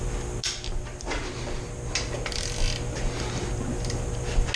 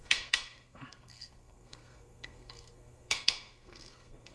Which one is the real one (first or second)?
first